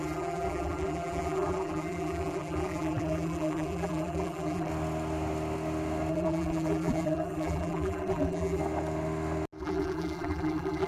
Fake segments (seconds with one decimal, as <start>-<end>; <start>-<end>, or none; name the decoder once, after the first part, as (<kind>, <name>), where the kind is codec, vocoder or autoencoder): 0.0-4.7 (vocoder, BigVGAN v2); 6.1-8.6; 9.6-10.9